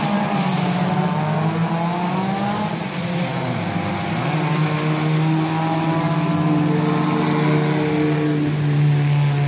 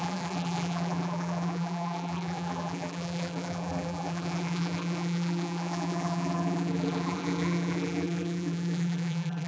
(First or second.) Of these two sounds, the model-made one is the second